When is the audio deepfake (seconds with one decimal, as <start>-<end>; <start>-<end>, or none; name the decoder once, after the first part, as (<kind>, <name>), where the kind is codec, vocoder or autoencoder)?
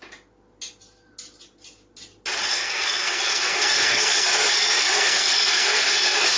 2.5-6.4 (codec, SNAC)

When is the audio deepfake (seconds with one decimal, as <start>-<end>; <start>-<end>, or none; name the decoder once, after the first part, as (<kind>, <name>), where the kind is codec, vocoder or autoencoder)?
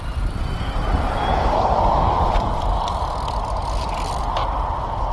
none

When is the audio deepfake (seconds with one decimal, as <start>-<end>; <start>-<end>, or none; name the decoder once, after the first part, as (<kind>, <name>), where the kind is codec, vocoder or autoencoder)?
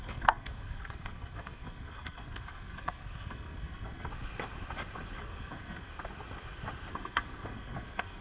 0.0-4.1 (codec, SNAC); 5.2-5.9; 6.9-8.2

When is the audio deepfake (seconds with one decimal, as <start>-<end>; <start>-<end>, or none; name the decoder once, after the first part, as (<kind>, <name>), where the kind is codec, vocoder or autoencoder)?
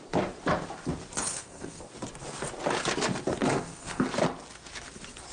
1.3-1.8 (codec, SNAC); 3.4-4.0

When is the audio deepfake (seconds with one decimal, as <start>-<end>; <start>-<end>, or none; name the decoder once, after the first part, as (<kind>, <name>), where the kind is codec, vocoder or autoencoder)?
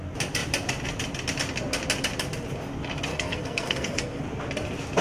3.1-4.2 (codec, SNAC)